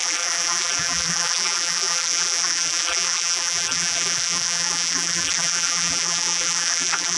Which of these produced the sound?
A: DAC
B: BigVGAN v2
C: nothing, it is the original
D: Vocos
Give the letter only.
B